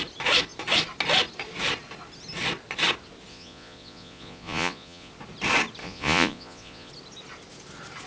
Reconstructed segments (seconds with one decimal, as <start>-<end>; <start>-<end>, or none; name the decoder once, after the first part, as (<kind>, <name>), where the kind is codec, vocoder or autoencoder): 3.3-5.1 (vocoder, Vocos); 5.8-6.9

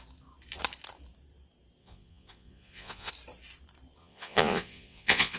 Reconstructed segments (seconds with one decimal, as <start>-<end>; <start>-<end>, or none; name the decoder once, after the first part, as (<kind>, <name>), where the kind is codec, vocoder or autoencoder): 1.8-3.1 (vocoder, Vocos); 4.0-5.4

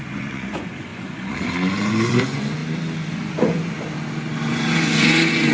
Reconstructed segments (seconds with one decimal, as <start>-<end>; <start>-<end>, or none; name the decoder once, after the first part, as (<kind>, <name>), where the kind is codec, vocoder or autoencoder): 0.0-2.6 (vocoder, Vocos); 3.2-3.6; 4.5-5.5

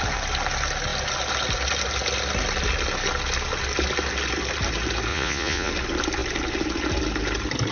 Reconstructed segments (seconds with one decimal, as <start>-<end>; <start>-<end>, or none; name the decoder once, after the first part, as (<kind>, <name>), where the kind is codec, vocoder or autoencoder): 5.1-5.7 (vocoder, Vocos)

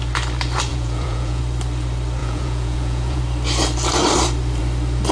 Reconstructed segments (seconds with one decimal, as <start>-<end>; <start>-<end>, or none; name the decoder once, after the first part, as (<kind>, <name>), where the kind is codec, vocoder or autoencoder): 0.7-1.4 (vocoder, Vocos); 2.2-3.2